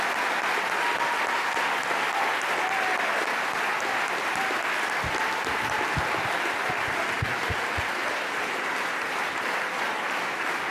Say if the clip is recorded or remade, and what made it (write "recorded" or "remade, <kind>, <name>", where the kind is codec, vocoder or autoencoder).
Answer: recorded